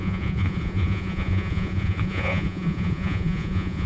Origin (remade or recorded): remade